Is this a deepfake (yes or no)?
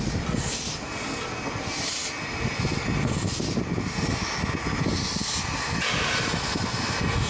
no